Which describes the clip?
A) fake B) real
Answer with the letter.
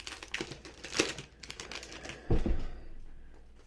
B